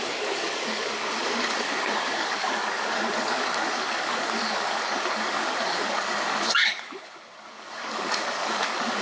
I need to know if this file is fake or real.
fake